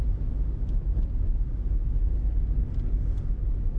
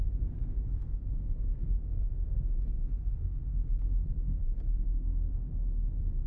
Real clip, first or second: first